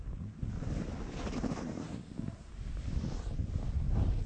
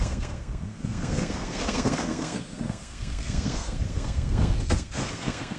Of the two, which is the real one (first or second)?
first